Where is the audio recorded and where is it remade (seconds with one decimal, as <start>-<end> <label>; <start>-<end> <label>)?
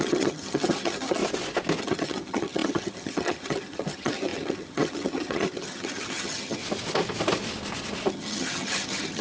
0.0-1.2 remade; 1.2-1.8 recorded; 1.8-6.6 remade; 6.6-8.1 recorded; 8.1-9.2 remade